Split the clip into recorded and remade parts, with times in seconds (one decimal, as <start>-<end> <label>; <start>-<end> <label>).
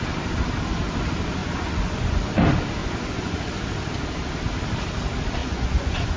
0.0-1.4 recorded; 1.4-2.3 remade; 2.3-2.8 recorded; 2.8-3.4 remade; 3.4-5.4 recorded; 5.4-6.2 remade